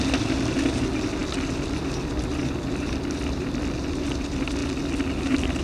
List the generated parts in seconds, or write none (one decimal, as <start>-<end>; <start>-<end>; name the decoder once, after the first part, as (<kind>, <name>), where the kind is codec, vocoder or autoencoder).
none